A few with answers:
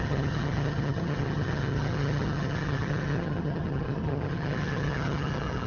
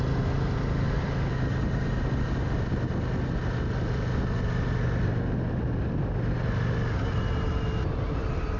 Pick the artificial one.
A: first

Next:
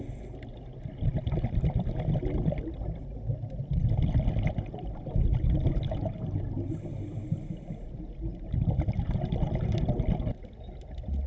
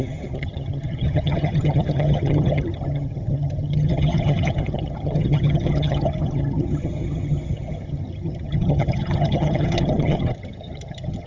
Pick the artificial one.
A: second